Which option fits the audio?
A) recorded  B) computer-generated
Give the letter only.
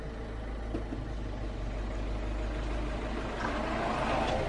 A